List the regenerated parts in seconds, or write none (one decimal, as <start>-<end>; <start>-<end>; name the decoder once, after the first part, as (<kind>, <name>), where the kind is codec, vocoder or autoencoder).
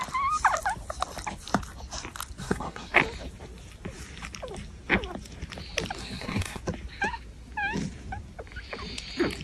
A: 2.4-3.0 (codec, SNAC); 6.0-6.6